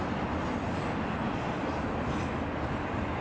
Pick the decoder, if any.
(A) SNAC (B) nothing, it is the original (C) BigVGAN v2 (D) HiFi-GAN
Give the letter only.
B